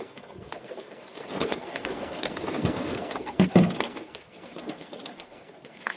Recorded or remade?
remade